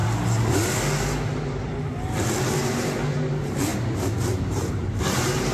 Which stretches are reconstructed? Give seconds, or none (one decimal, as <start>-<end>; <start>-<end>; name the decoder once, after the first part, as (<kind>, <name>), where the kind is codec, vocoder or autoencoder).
2.5-5.5 (vocoder, BigVGAN v2)